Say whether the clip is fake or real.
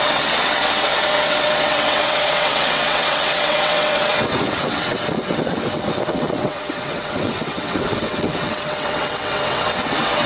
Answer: fake